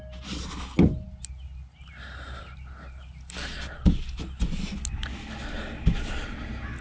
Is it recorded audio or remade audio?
recorded